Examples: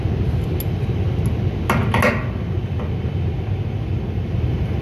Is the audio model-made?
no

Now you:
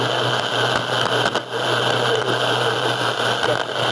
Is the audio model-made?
no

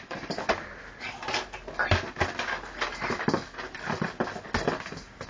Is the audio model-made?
no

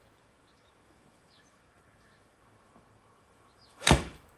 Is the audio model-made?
yes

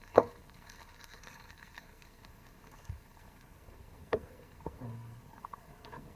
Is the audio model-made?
yes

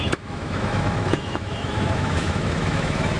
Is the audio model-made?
yes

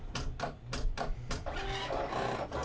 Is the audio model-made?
no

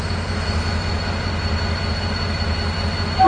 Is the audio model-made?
no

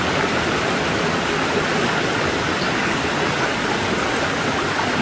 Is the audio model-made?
yes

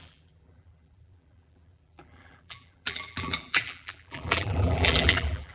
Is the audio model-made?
yes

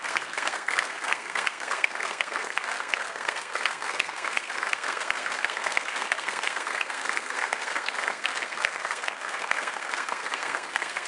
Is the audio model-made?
yes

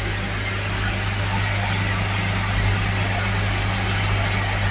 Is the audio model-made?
no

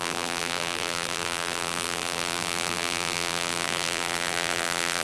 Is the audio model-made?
yes